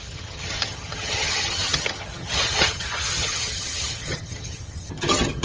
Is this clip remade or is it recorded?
remade